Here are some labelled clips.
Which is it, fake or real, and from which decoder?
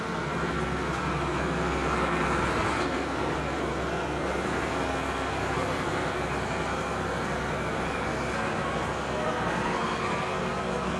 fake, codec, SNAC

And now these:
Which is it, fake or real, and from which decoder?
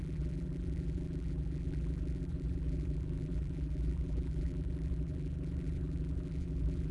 fake, vocoder, BigVGAN v2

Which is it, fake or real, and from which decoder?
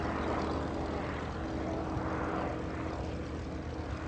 real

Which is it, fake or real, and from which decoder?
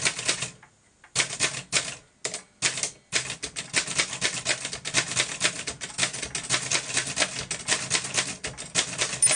real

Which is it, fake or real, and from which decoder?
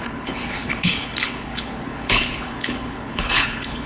fake, codec, HILCodec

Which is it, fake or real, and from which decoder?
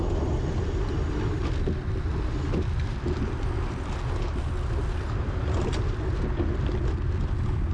real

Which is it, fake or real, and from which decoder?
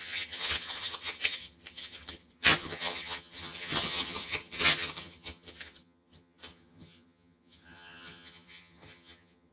fake, vocoder, HiFi-GAN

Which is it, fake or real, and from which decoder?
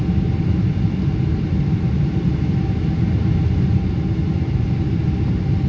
real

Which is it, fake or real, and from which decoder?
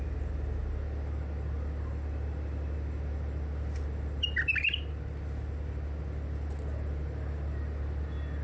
real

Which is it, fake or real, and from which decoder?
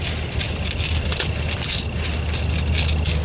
real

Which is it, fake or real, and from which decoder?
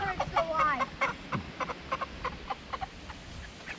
real